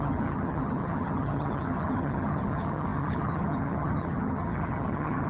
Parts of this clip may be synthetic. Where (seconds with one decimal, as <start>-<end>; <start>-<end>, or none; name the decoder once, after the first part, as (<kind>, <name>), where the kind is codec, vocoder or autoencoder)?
0.0-5.3 (vocoder, HiFi-GAN)